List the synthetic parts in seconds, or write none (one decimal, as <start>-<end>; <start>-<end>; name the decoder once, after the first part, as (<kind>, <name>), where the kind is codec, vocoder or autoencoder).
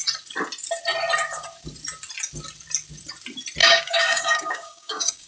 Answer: 3.6-5.3 (codec, DAC)